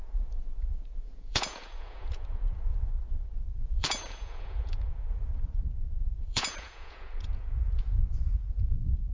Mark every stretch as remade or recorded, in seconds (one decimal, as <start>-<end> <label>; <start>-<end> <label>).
0.0-2.9 remade; 2.9-3.6 recorded; 3.6-8.0 remade; 8.0-9.1 recorded